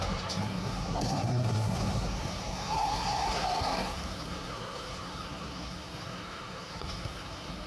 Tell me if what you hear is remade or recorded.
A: remade